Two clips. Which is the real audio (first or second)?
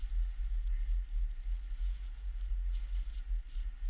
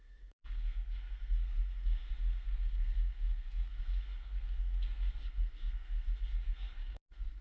first